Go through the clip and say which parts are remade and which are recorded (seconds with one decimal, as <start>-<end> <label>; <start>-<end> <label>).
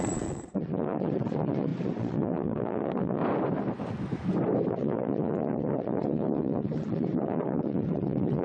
0.0-3.2 remade; 3.2-4.7 recorded; 4.7-8.4 remade